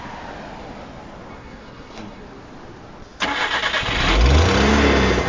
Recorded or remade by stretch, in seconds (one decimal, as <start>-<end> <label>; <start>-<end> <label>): 0.0-1.3 recorded; 1.3-2.2 remade; 2.2-5.3 recorded